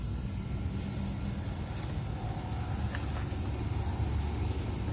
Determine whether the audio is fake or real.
real